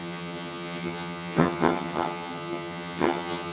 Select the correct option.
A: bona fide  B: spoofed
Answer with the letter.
B